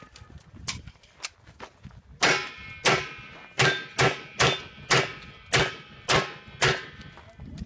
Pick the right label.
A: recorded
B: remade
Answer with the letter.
A